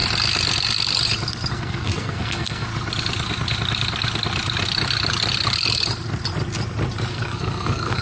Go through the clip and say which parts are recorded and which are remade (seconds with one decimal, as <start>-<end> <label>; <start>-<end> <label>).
0.0-1.5 recorded; 1.5-2.7 remade; 2.7-7.1 recorded; 7.1-8.0 remade